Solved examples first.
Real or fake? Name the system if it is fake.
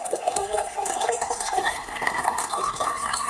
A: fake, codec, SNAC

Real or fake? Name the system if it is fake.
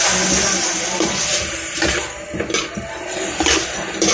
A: real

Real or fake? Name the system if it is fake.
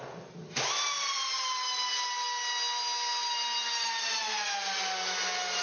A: real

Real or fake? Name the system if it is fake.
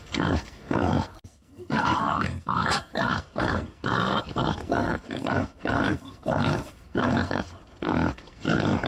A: fake, codec, SNAC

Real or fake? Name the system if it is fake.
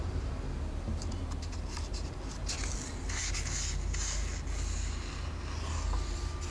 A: real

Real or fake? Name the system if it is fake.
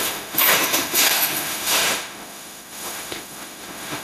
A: fake, autoencoder, DAC-VAE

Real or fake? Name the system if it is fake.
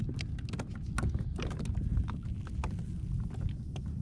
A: real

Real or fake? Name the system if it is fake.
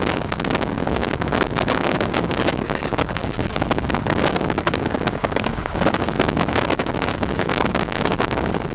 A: fake, codec, DAC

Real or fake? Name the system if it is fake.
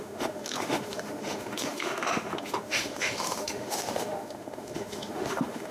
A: fake, autoencoder, DAC-VAE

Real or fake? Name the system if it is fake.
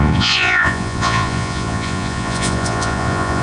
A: fake, vocoder, Vocos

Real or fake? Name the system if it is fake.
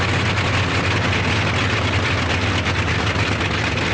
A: real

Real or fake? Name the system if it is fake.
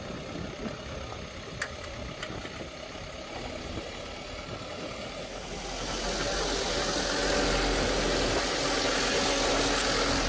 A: real